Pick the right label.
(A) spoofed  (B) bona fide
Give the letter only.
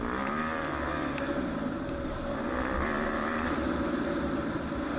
B